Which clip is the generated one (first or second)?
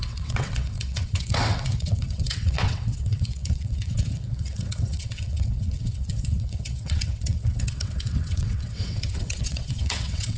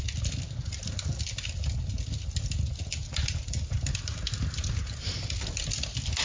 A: first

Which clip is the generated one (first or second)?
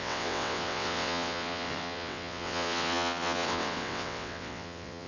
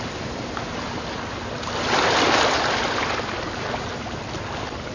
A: first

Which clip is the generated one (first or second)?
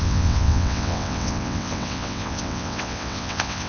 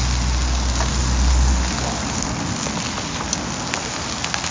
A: first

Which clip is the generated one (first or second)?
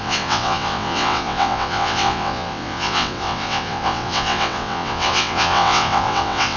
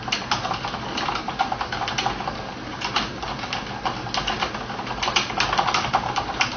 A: first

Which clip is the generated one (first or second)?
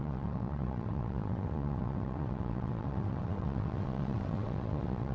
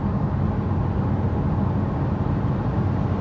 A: first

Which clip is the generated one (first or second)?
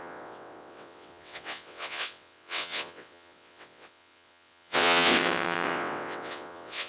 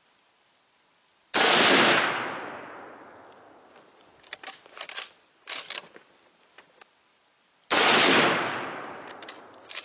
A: first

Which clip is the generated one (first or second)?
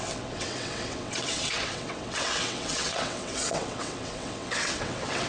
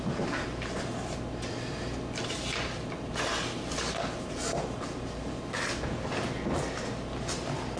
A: first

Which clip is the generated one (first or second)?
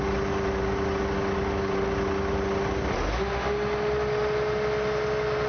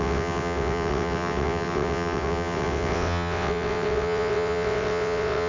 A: second